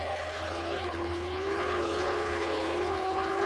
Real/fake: fake